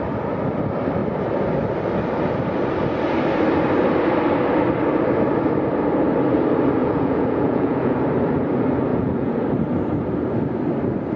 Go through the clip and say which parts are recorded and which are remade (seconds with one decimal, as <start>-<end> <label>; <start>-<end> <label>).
0.0-6.8 recorded; 6.8-8.0 remade; 8.0-8.9 recorded; 8.9-9.4 remade; 9.4-11.2 recorded